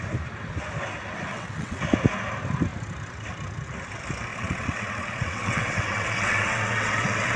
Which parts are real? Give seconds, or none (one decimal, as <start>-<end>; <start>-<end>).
0.0-1.3; 1.8-4.3